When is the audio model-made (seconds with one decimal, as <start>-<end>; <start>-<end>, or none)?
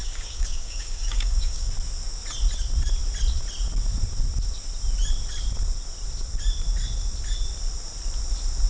0.0-1.7